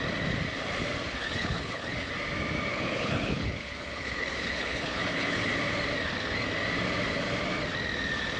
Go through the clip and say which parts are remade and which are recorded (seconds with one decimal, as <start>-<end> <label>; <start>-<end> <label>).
0.0-1.2 recorded; 1.2-2.1 remade; 2.1-2.7 recorded; 2.7-5.5 remade; 5.5-8.4 recorded